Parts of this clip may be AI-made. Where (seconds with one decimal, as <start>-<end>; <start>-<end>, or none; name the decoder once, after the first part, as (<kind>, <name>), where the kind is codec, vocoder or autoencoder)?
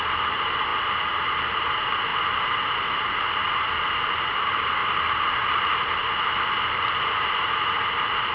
none